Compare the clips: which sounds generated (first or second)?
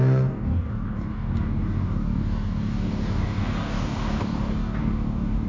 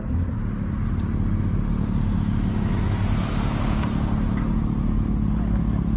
first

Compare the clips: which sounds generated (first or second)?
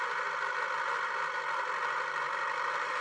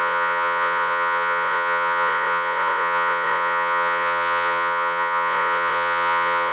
second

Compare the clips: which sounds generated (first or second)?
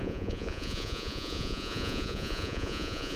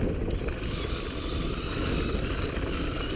first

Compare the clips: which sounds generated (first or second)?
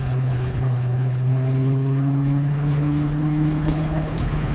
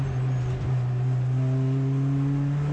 first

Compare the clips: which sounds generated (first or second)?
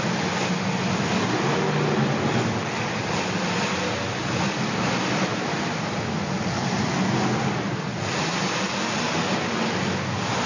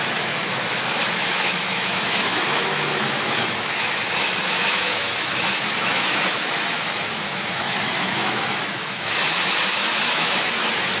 second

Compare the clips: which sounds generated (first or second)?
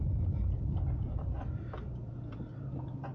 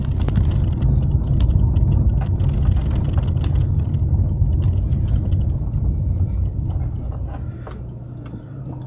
first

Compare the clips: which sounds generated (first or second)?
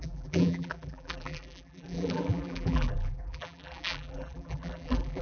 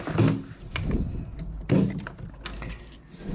first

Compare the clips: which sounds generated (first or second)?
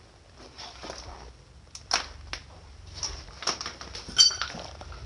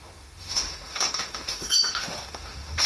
second